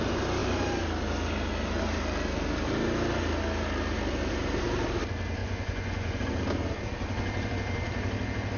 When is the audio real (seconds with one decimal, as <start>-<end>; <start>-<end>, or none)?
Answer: 0.0-5.4; 6.2-8.6